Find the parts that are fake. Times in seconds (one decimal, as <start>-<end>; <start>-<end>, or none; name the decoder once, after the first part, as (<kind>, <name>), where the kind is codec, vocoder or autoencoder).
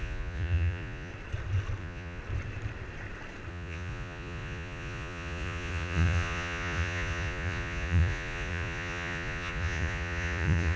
0.0-1.1 (vocoder, Vocos); 1.8-2.2; 3.5-10.8